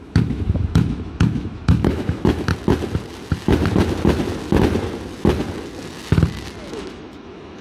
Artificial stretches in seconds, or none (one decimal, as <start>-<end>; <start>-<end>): 0.0-2.5; 6.7-7.6